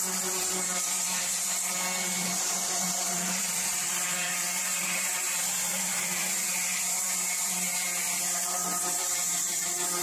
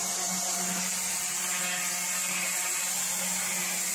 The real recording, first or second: second